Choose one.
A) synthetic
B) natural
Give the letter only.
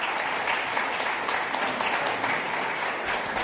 B